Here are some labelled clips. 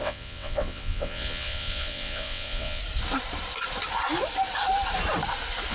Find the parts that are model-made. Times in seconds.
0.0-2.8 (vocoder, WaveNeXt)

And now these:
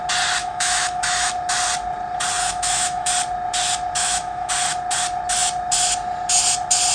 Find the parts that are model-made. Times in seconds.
0.4-1.3 (autoencoder, DAC-VAE); 2.4-3.1; 4.0-4.5